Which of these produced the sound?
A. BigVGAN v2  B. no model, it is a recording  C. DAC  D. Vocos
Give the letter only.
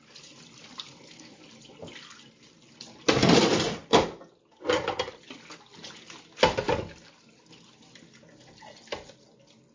B